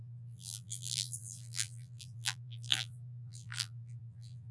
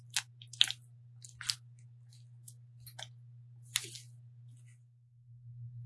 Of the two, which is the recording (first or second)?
second